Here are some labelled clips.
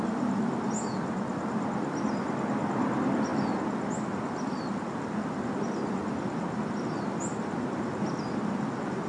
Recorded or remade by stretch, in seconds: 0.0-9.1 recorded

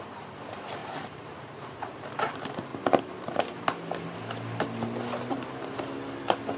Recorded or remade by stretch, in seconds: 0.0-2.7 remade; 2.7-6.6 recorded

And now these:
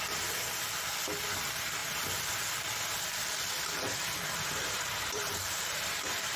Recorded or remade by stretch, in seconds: 0.0-3.2 recorded; 3.2-6.4 remade

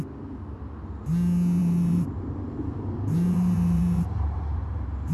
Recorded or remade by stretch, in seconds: 0.0-1.6 recorded; 1.6-5.1 remade

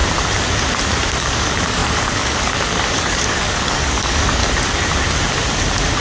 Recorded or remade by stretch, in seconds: 0.0-1.2 recorded; 1.2-4.4 remade; 4.4-6.0 recorded